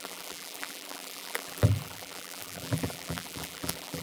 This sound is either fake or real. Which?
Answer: fake